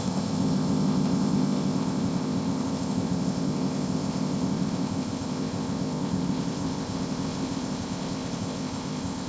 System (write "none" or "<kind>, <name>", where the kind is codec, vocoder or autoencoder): codec, ZipCodec